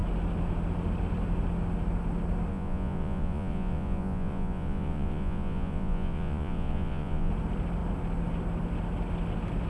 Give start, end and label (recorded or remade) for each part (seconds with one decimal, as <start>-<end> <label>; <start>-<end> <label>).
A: 0.0-2.5 recorded; 2.5-7.3 remade; 7.3-9.7 recorded